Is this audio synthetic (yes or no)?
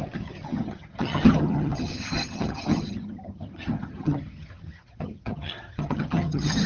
yes